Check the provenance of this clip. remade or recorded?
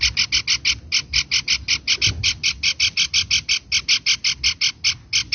recorded